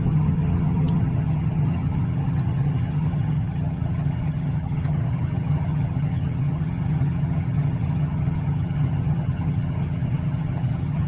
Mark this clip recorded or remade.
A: remade